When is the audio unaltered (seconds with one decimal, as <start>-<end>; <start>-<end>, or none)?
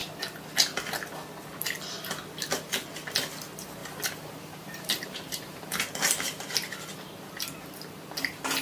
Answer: 0.0-3.8; 5.8-8.6